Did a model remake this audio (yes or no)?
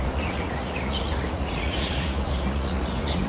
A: yes